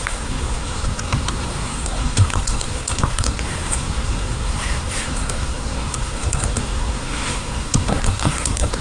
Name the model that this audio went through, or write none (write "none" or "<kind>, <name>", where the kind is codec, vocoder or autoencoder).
codec, SNAC